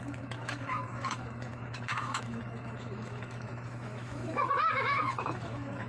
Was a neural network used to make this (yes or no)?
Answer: yes